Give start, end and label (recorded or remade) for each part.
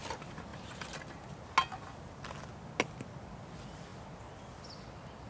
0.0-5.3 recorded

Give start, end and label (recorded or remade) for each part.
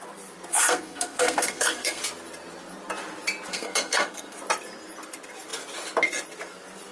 0.0-0.5 recorded; 0.5-2.0 remade; 2.0-3.5 recorded; 3.5-4.4 remade; 4.4-6.9 recorded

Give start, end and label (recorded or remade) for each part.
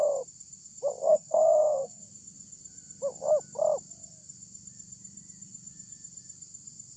0.0-1.0 recorded; 1.0-2.0 remade; 2.0-7.0 recorded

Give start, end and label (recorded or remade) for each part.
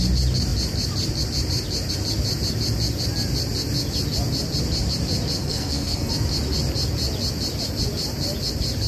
0.0-5.4 recorded; 5.4-6.1 remade; 6.1-8.9 recorded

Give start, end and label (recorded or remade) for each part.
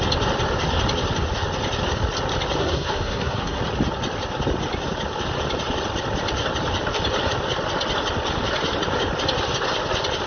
0.0-2.6 recorded; 2.6-3.6 remade; 3.6-10.3 recorded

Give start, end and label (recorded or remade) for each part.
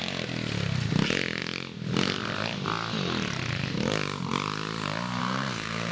0.0-5.2 recorded; 5.2-5.9 remade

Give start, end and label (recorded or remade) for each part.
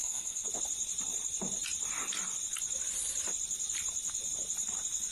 0.0-0.5 remade; 0.5-5.1 recorded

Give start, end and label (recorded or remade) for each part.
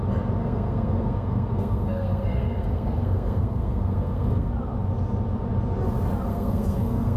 0.0-0.4 recorded; 0.4-4.5 remade; 4.5-6.3 recorded; 6.3-7.2 remade